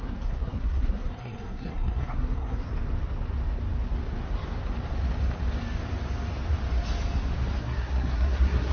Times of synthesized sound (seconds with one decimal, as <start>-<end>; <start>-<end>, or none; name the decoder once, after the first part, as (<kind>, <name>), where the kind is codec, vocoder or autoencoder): 0.0-2.7 (codec, SNAC); 7.6-8.7